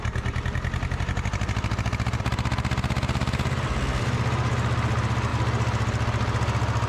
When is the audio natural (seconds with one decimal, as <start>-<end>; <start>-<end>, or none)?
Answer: 0.0-6.9